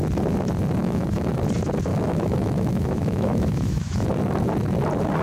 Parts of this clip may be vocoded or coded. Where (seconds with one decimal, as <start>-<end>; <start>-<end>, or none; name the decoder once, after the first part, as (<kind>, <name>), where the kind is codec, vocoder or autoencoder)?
0.8-1.3 (autoencoder, DAC-VAE); 1.9-4.1